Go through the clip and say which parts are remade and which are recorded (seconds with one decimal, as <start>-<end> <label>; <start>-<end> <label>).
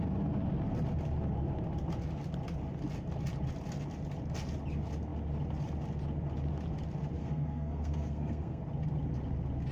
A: 0.0-7.2 recorded; 7.2-8.6 remade; 8.6-9.7 recorded